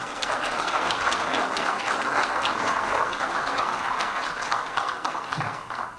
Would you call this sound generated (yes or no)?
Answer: yes